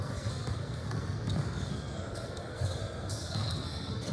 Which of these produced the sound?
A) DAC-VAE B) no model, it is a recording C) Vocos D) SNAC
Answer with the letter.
D